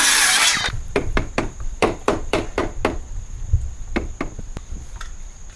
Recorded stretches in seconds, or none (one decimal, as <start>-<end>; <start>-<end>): 2.6-5.6